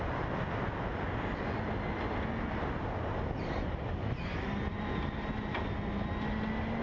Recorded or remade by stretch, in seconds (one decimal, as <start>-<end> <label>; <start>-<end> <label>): 0.0-6.8 recorded